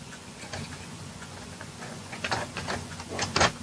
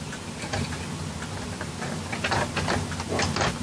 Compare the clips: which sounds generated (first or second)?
first